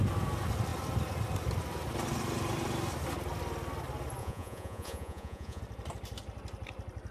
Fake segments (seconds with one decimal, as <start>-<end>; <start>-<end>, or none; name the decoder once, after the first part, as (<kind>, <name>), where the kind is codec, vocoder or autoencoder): 4.2-5.6 (vocoder, Vocos)